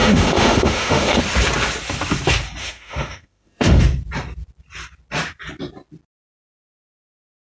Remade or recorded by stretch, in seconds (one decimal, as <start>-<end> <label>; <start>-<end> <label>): 0.0-1.2 remade; 1.2-2.6 recorded; 2.6-3.8 remade; 3.8-7.5 recorded